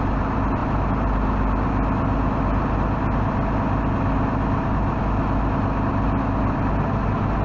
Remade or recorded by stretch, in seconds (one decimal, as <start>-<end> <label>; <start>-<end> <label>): 0.0-7.4 recorded